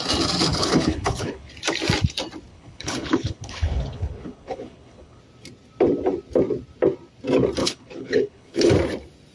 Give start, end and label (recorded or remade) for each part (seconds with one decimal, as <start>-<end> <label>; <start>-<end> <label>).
0.0-0.5 recorded; 0.5-1.5 remade; 1.5-2.5 recorded; 2.5-5.2 remade; 5.2-7.6 recorded; 7.6-8.7 remade; 8.7-9.3 recorded